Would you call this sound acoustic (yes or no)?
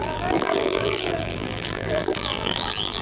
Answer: no